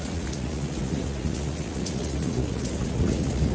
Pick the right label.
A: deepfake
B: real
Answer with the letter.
A